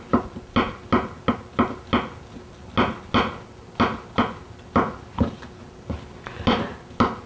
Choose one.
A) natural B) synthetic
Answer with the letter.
A